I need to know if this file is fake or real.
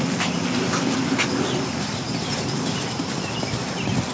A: real